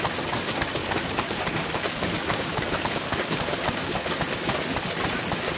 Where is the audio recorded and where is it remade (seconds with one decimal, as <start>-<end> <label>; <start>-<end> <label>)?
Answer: 0.0-0.8 recorded; 0.8-4.2 remade; 4.2-5.6 recorded